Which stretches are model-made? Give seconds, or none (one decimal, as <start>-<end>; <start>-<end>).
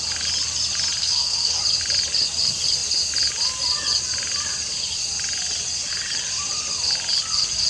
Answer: 1.0-1.6